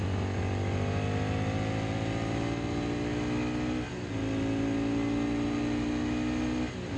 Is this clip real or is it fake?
real